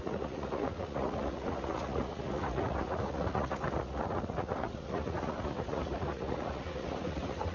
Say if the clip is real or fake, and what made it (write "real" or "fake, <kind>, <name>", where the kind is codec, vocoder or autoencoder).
fake, vocoder, Vocos